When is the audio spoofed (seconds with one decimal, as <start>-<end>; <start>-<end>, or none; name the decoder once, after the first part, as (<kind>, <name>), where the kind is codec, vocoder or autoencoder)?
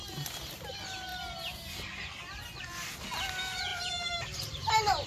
3.7-5.1 (vocoder, BigVGAN v2)